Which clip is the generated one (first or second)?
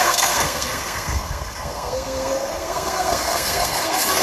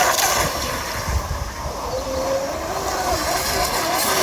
first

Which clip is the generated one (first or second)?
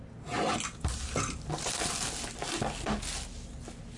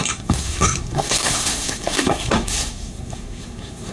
second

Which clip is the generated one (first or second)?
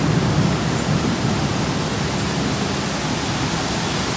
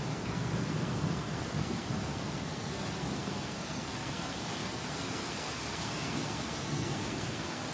second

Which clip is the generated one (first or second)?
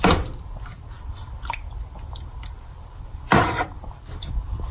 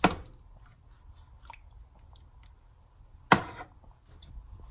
first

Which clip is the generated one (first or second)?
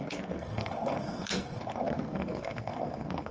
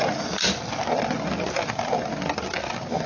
first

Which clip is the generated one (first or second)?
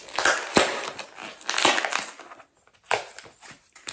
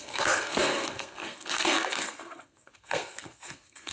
second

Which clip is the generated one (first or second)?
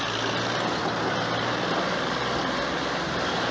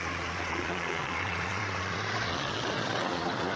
second